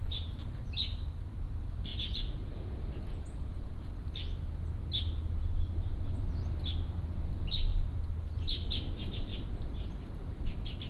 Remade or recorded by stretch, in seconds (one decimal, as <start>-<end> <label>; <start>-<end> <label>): 0.0-1.9 recorded; 1.9-3.9 remade; 3.9-10.9 recorded